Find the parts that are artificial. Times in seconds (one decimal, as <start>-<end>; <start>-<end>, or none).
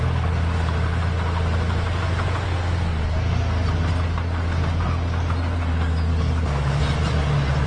6.1-6.8